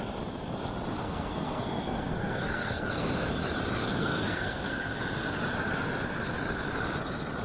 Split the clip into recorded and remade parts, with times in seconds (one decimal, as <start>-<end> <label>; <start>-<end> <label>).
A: 0.0-1.0 recorded; 1.0-3.3 remade; 3.3-3.8 recorded; 3.8-5.0 remade; 5.0-7.4 recorded